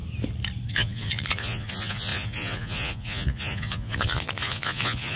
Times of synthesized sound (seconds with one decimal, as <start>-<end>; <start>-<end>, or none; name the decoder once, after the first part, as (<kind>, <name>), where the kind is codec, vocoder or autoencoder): 0.7-5.2 (vocoder, Vocos)